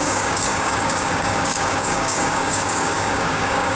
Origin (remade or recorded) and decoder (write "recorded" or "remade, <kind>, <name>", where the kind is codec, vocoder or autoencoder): remade, codec, DAC